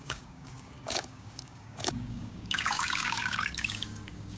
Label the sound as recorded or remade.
remade